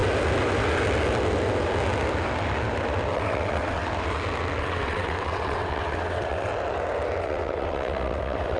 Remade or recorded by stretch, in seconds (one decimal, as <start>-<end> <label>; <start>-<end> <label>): 0.0-3.1 recorded; 3.1-3.8 remade; 3.8-4.6 recorded; 4.6-6.5 remade; 6.5-7.2 recorded; 7.2-8.6 remade